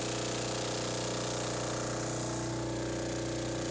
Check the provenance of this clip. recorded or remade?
recorded